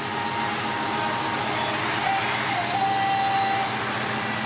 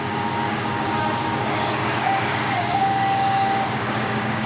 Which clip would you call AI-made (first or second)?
second